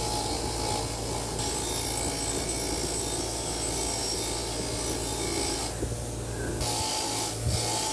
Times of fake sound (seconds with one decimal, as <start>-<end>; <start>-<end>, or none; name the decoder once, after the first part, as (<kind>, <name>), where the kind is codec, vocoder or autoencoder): none